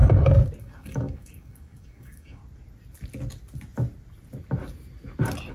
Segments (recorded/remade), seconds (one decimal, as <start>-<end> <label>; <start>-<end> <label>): 0.0-0.6 recorded; 0.6-2.4 remade; 2.4-5.5 recorded

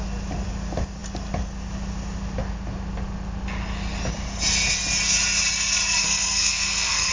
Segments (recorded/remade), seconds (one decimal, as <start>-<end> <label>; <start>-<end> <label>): 0.0-6.0 recorded; 6.0-7.1 remade

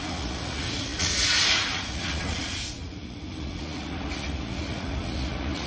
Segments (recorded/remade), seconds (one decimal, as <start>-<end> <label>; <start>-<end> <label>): 0.0-5.7 remade